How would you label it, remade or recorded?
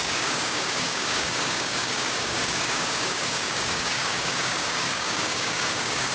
remade